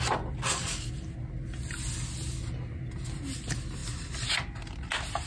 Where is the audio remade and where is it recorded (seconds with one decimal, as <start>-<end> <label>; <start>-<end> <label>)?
0.0-5.3 recorded